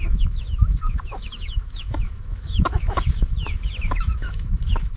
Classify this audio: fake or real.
fake